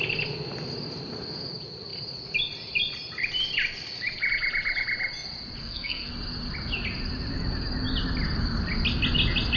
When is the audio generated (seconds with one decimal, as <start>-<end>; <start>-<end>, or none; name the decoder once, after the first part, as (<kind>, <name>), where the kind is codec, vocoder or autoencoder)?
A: 5.6-6.1 (codec, SNAC)